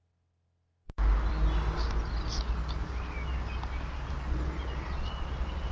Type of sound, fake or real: real